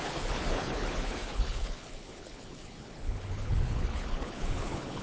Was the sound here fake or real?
fake